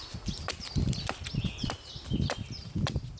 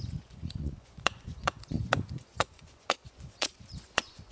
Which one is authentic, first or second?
first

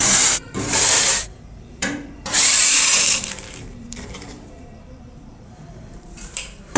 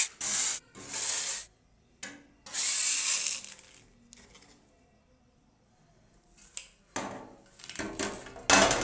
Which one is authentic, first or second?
second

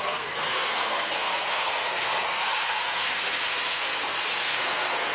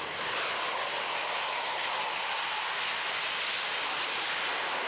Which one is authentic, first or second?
second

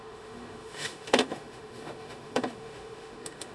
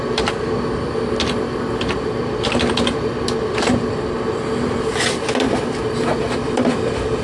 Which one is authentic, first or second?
second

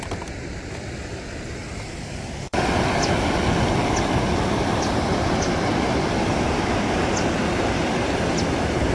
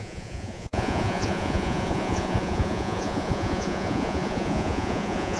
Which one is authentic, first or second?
first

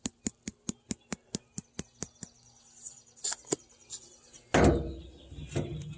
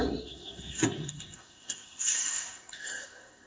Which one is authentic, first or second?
first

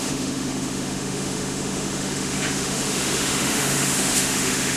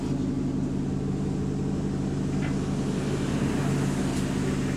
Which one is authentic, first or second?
second